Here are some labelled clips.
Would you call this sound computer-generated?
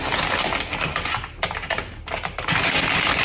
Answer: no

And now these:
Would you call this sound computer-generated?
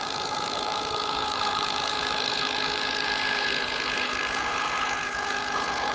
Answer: yes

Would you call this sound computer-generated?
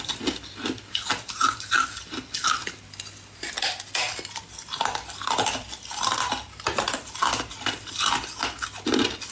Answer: no